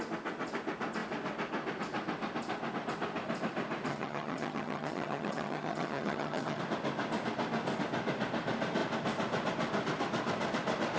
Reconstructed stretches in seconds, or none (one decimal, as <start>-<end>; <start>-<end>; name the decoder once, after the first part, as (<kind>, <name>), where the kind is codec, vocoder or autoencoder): 3.9-6.6 (vocoder, HiFi-GAN)